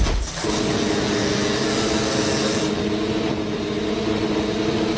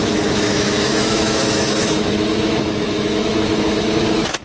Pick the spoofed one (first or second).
second